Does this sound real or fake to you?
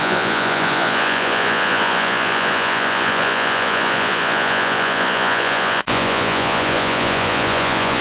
fake